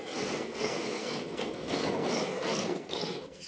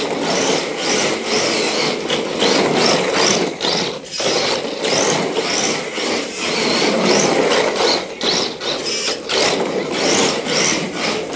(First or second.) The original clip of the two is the second